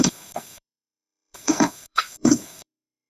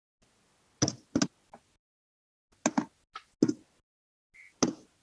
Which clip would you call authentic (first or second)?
second